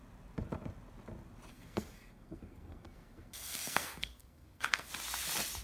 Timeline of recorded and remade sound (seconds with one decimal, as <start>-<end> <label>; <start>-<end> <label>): 0.0-1.5 recorded; 1.5-4.9 remade; 4.9-5.6 recorded

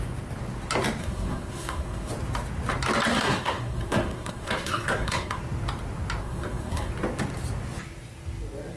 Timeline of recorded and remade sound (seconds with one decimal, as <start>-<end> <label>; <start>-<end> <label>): 0.0-1.0 recorded; 1.0-2.1 remade; 2.1-3.1 recorded; 3.1-5.4 remade; 5.4-6.2 recorded; 6.2-6.9 remade; 6.9-8.8 recorded

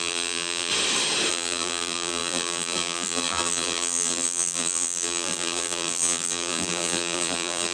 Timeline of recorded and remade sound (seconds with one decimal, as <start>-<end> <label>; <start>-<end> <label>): 0.0-0.7 remade; 0.7-1.3 recorded; 1.3-7.7 remade

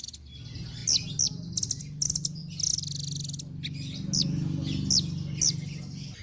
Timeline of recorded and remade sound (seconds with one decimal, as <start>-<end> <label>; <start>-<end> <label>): 0.0-6.2 recorded

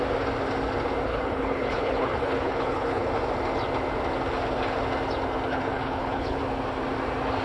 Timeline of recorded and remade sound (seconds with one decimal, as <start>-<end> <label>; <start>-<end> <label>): 0.0-1.1 recorded; 1.1-3.1 remade; 3.1-5.5 recorded; 5.5-6.4 remade; 6.4-7.4 recorded

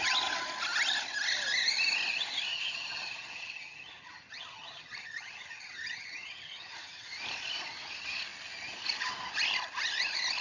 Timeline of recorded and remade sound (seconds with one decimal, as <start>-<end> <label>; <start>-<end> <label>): 0.0-2.5 recorded; 2.5-7.1 remade; 7.1-10.4 recorded